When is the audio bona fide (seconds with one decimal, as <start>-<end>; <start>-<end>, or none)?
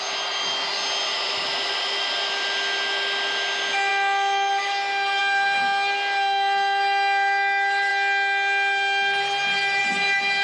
0.0-10.4